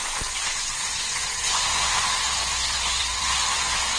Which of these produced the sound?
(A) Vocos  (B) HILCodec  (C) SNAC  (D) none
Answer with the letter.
A